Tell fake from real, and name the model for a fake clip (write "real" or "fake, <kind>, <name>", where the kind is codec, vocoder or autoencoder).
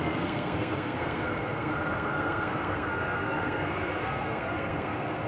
fake, codec, SNAC